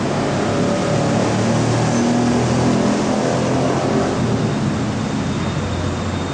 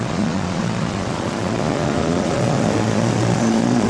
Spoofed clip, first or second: second